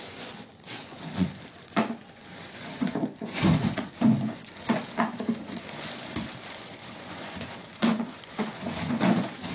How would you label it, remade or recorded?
remade